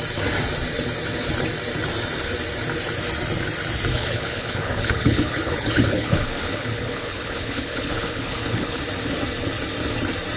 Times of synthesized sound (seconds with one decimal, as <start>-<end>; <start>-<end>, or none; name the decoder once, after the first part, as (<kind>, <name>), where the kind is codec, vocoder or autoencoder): 3.9-8.8 (codec, HILCodec)